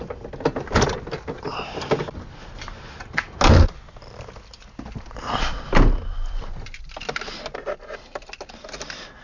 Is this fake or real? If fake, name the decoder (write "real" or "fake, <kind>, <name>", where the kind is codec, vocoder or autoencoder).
real